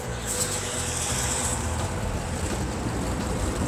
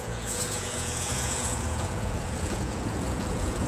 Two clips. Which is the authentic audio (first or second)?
first